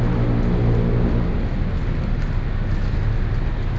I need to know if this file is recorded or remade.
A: recorded